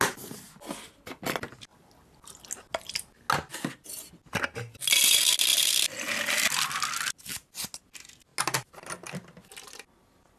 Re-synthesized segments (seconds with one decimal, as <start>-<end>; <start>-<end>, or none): none